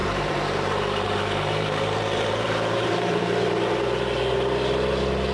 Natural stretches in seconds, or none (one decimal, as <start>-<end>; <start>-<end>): 3.2-5.3